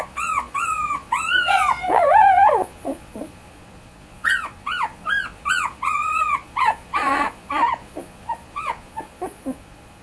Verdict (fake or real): fake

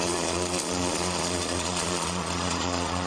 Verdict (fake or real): fake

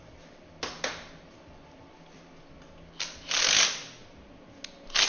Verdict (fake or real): real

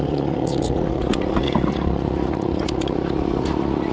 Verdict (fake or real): fake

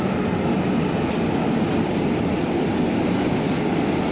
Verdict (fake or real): real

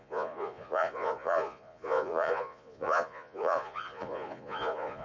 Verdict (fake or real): fake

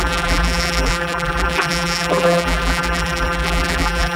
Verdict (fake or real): fake